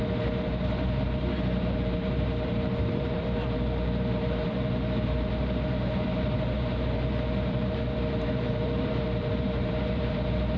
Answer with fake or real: fake